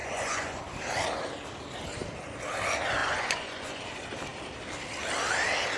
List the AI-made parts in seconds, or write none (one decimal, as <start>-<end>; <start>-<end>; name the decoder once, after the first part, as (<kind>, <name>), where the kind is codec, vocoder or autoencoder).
0.0-0.6 (vocoder, Vocos); 3.0-3.8